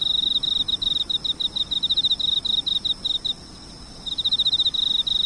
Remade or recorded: recorded